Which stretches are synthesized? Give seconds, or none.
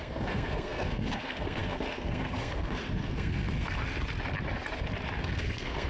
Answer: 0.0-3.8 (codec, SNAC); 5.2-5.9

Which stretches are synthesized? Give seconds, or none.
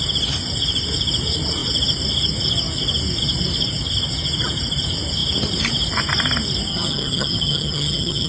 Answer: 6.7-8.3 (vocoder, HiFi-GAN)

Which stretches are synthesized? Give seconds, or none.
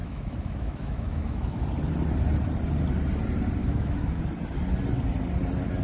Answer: 0.0-1.6 (autoencoder, DAC-VAE); 3.6-4.2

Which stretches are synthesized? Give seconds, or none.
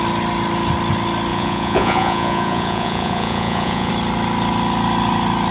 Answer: 1.3-3.9 (vocoder, Vocos)